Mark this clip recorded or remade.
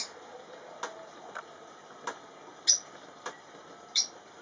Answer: recorded